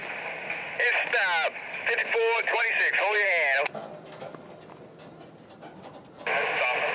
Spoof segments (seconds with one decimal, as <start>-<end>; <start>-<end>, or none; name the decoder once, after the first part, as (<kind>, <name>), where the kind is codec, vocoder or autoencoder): 2.0-2.8 (autoencoder, DAC-VAE)